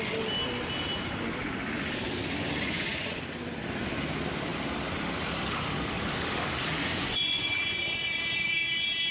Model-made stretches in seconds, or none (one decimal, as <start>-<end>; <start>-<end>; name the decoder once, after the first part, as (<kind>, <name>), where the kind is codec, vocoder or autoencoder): 2.4-3.2 (vocoder, Vocos); 6.8-9.1